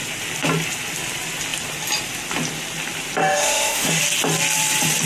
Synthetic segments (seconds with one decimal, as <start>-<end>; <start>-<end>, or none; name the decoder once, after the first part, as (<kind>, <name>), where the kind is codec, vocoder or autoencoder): 3.2-4.0 (autoencoder, DAC-VAE)